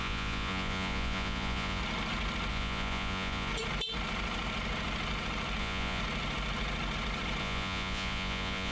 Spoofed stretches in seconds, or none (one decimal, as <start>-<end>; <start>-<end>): 0.0-1.8; 2.5-3.5; 5.6-6.0; 7.4-8.7